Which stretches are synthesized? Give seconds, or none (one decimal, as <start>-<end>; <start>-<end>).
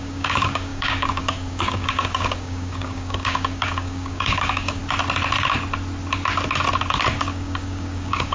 0.0-4.8; 7.1-8.3